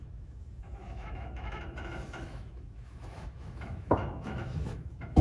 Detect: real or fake fake